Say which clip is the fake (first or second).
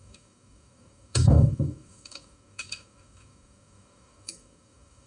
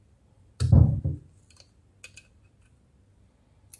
first